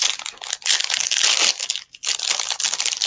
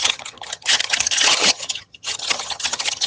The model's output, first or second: second